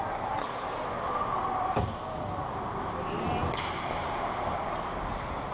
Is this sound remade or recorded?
recorded